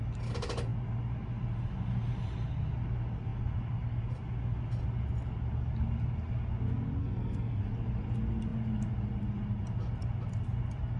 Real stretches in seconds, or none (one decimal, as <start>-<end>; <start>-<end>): 0.0-7.0; 7.6-11.0